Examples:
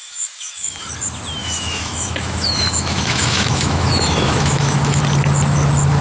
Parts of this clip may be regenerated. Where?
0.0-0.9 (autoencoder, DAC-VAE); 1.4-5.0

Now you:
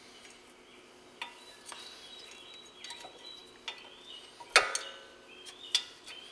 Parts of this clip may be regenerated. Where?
none